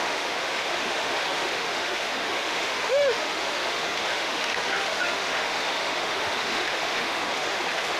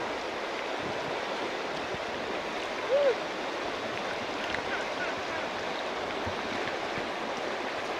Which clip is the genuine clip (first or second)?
second